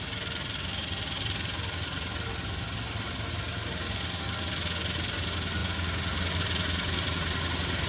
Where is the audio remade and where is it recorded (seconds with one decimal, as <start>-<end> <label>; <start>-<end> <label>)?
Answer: 0.0-7.9 recorded